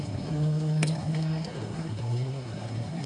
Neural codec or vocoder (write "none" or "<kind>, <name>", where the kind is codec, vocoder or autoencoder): codec, SNAC